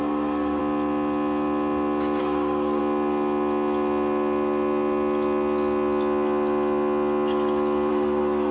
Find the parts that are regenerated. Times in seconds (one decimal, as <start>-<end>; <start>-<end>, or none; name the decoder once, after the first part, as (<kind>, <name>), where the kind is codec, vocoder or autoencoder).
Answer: 0.0-0.6 (codec, SNAC); 2.2-2.8; 7.9-8.5